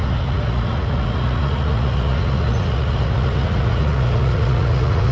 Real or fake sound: fake